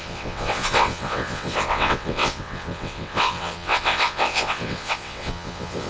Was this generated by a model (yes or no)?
yes